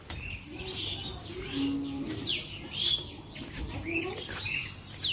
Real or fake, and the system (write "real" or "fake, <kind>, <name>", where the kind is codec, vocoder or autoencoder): real